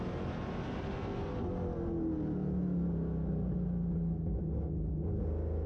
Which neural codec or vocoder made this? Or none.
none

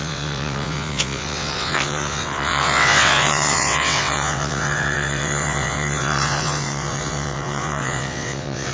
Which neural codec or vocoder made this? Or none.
vocoder, WaveNeXt